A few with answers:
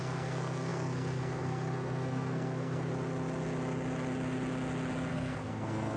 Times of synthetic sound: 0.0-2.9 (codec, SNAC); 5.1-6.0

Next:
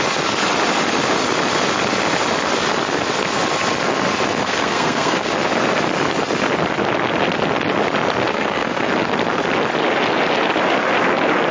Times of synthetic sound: 4.4-5.3 (codec, SNAC); 8.3-8.9

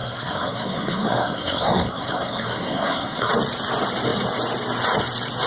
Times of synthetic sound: 0.0-3.3 (codec, SNAC)

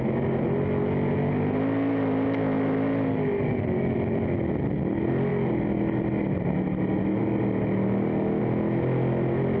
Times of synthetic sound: none

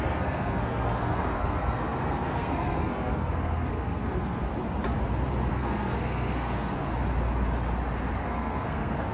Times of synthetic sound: 0.0-4.5 (codec, SNAC); 5.5-6.9; 8.2-9.1

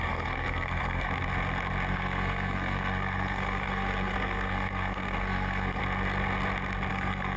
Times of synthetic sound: 0.0-1.1 (codec, SNAC); 1.9-5.8; 6.9-7.4

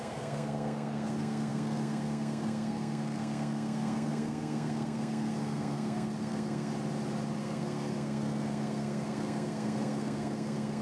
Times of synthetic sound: 0.0-6.7 (codec, SNAC); 7.4-10.8